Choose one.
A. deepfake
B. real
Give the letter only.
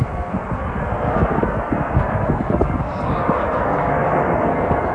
A